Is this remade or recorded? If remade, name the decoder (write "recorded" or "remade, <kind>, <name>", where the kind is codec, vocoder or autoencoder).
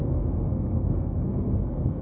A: remade, codec, SNAC